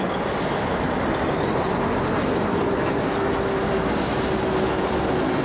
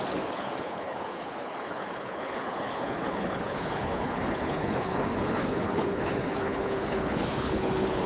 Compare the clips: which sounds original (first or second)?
first